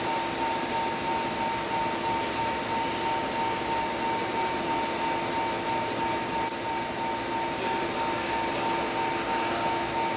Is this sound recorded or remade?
recorded